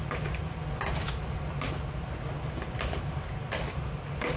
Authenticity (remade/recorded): recorded